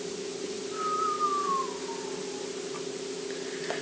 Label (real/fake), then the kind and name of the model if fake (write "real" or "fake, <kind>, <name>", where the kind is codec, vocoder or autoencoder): real